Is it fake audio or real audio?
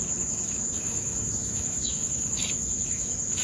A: fake